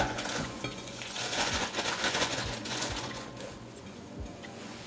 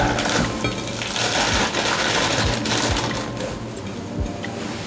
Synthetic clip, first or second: first